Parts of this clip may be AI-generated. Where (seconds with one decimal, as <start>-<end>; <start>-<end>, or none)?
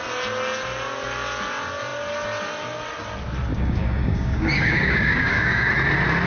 3.5-5.7